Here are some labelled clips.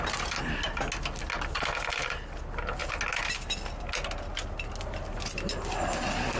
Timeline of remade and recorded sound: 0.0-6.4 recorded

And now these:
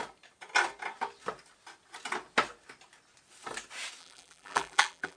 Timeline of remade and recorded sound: 0.0-4.0 recorded; 4.0-5.2 remade

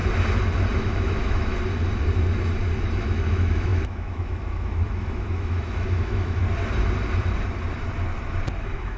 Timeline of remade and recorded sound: 0.0-0.8 recorded; 0.8-1.5 remade; 1.5-3.0 recorded; 3.0-6.4 remade; 6.4-8.6 recorded; 8.6-9.0 remade

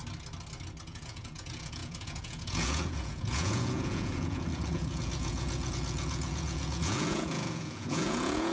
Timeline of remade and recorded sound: 0.0-0.8 recorded; 0.8-8.5 remade

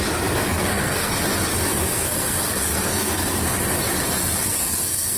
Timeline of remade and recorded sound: 0.0-0.5 recorded; 0.5-1.1 remade; 1.1-1.7 recorded; 1.7-3.6 remade; 3.6-4.4 recorded; 4.4-5.2 remade

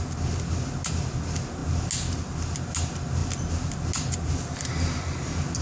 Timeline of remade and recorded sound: 0.0-5.6 recorded

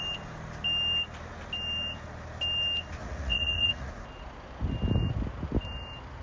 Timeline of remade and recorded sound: 0.0-3.0 recorded; 3.0-3.9 remade; 3.9-6.2 recorded